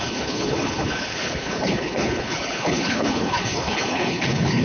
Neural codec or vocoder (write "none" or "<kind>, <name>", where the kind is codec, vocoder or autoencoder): codec, HILCodec